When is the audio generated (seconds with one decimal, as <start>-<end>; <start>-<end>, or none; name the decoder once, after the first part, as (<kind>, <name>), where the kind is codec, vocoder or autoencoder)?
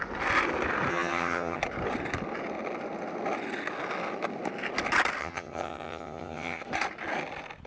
0.9-1.6 (vocoder, HiFi-GAN); 5.2-6.6